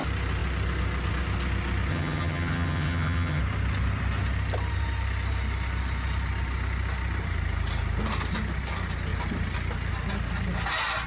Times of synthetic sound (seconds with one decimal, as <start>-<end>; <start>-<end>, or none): 1.9-3.4